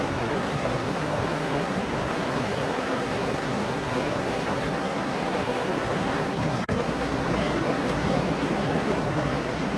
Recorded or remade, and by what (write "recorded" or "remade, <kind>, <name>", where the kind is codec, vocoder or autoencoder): remade, codec, SNAC